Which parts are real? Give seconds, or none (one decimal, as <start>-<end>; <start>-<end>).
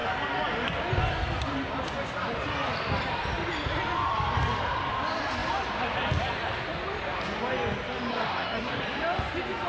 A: 0.0-8.1; 8.8-9.7